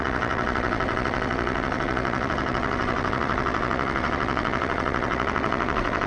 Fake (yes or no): yes